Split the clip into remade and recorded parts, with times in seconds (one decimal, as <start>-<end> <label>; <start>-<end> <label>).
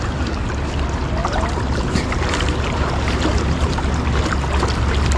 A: 0.0-1.2 recorded; 1.2-4.3 remade; 4.3-5.2 recorded